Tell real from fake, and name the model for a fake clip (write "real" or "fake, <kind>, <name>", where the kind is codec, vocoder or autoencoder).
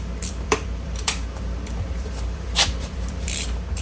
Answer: fake, vocoder, BigVGAN v2